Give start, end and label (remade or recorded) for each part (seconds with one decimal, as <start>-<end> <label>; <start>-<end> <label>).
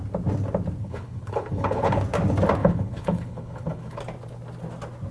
0.0-0.8 recorded; 0.8-2.0 remade; 2.0-2.6 recorded; 2.6-4.0 remade; 4.0-5.1 recorded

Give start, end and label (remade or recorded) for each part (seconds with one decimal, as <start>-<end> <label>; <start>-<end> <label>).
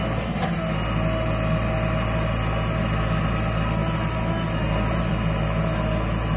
0.0-6.4 recorded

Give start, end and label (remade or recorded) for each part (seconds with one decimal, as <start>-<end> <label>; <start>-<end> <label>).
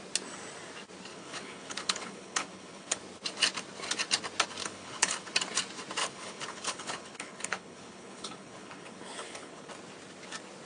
0.0-1.1 recorded; 1.1-3.0 remade; 3.0-4.6 recorded; 4.6-5.3 remade; 5.3-6.0 recorded; 6.0-9.7 remade; 9.7-10.7 recorded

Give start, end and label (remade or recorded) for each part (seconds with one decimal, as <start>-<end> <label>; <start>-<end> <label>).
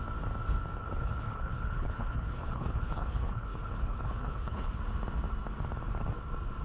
0.0-0.8 recorded; 0.8-4.8 remade; 4.8-6.6 recorded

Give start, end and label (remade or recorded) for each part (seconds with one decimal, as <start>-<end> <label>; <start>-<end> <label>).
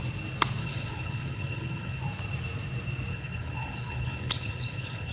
0.0-0.6 recorded; 0.6-2.0 remade; 2.0-3.1 recorded; 3.1-5.1 remade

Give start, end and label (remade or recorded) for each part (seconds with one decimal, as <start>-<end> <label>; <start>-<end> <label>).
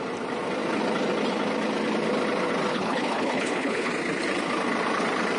0.0-2.7 recorded; 2.7-3.9 remade; 3.9-5.4 recorded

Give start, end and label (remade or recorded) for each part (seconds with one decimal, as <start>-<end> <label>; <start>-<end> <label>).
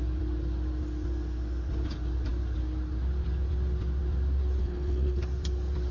0.0-4.6 recorded; 4.6-5.2 remade; 5.2-5.9 recorded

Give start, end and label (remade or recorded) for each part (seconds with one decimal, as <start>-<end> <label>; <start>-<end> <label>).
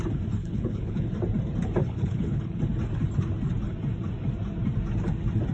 0.0-0.4 recorded; 0.4-1.1 remade; 1.1-1.8 recorded; 1.8-2.6 remade; 2.6-5.5 recorded